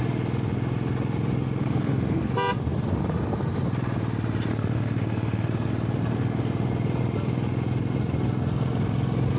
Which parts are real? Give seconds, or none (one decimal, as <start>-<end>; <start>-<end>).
0.0-1.6; 2.3-4.5; 5.7-9.4